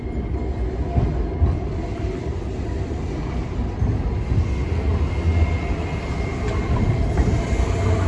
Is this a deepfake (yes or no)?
no